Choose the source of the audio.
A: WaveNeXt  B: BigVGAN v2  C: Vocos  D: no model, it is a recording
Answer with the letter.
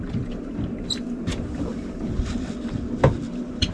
B